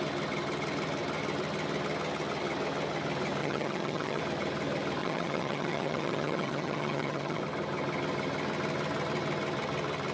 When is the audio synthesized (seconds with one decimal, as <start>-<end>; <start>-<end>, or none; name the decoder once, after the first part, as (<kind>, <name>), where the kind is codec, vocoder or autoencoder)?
3.4-4.2 (vocoder, HiFi-GAN); 5.0-7.4